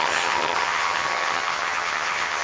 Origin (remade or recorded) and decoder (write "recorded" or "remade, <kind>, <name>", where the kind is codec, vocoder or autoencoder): remade, vocoder, HiFi-GAN